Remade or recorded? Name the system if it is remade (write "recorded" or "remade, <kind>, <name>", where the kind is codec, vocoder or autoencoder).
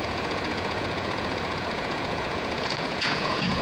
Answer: remade, vocoder, Vocos